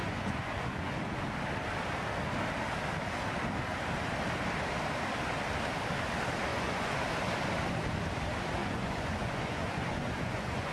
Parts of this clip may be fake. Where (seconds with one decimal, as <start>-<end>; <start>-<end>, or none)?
0.0-1.0; 6.5-7.0; 8.6-10.7